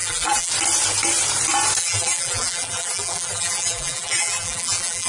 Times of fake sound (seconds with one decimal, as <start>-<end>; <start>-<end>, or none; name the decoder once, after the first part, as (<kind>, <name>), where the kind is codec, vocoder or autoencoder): 0.0-0.5 (vocoder, BigVGAN v2); 1.8-5.1